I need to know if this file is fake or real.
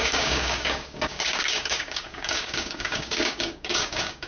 fake